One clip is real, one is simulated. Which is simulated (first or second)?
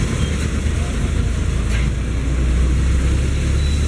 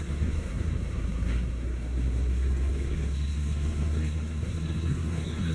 second